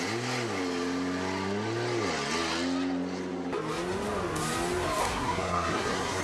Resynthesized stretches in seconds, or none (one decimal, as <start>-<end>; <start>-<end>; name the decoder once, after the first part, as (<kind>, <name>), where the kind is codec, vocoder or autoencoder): 5.0-6.2 (codec, SNAC)